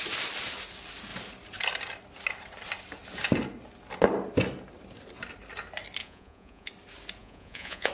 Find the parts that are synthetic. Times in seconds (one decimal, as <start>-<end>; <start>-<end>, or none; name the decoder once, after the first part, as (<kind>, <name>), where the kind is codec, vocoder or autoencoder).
6.0-6.7 (vocoder, Vocos); 7.2-7.9